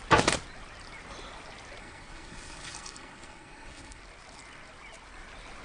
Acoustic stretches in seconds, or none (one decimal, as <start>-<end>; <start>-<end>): 0.0-1.8; 4.0-5.6